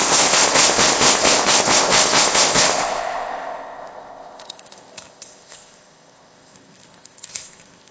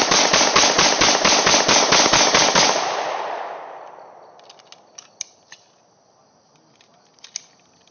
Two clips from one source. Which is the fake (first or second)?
first